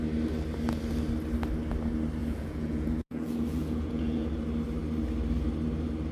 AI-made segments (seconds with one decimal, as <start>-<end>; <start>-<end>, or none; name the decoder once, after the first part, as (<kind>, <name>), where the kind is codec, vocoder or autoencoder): 2.2-4.3 (vocoder, Vocos)

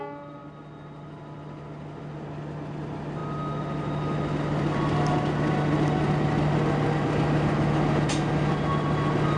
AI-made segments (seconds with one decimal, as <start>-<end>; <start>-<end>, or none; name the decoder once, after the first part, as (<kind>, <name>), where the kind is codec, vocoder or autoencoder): none

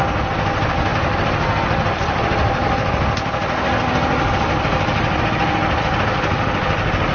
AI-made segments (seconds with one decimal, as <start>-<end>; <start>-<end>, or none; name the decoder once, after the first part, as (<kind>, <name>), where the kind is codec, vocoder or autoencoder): none

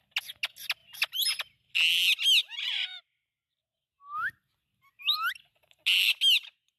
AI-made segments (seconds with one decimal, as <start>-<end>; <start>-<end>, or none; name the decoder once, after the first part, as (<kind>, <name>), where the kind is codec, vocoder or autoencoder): 2.4-3.0 (vocoder, Vocos)

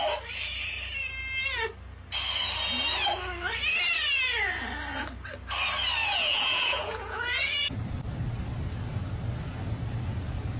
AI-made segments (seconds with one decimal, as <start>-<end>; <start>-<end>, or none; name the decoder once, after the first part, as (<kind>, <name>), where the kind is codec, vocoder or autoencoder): 6.0-7.7 (vocoder, Vocos)

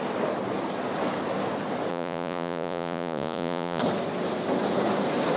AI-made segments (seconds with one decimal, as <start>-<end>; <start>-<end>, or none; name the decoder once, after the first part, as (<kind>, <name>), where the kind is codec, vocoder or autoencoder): 1.9-3.8 (vocoder, Vocos)